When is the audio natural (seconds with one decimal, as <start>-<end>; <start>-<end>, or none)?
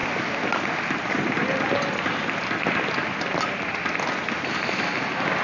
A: 0.0-5.4